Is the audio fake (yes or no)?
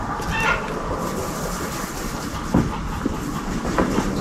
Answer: no